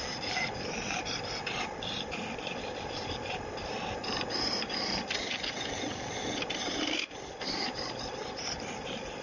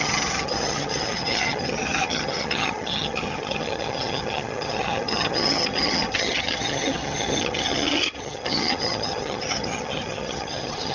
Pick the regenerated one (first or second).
second